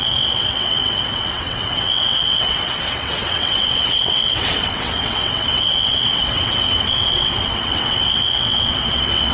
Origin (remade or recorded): remade